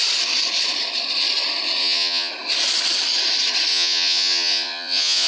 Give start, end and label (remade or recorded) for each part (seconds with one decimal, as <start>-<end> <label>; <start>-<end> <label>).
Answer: 0.0-1.8 recorded; 1.8-2.3 remade; 2.3-3.7 recorded; 3.7-5.3 remade